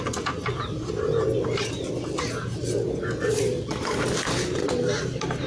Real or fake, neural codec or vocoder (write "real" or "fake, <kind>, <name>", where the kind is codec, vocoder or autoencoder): real